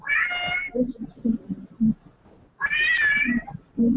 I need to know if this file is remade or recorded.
recorded